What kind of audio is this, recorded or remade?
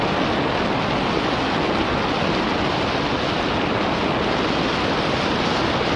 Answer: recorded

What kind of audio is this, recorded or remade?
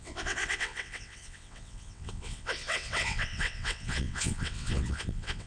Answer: remade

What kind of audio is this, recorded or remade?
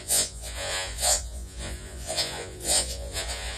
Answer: remade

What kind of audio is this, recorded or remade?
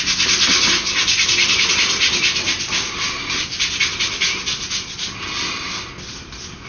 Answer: recorded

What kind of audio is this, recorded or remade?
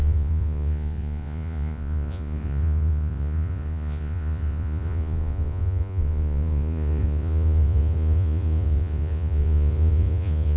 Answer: remade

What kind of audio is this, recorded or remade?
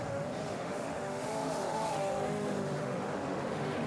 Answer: remade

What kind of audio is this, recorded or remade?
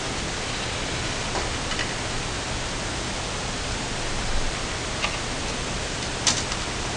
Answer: recorded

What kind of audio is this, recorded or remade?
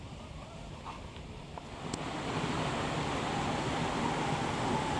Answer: recorded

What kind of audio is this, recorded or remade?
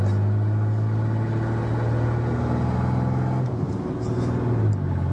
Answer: recorded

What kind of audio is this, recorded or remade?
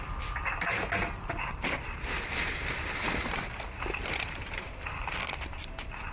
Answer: remade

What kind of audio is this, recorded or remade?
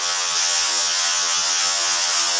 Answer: remade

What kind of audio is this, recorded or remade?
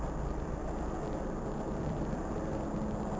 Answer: recorded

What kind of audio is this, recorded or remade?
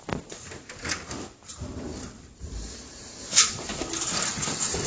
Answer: recorded